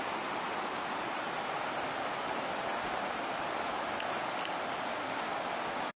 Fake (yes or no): no